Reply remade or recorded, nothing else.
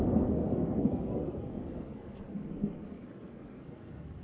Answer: remade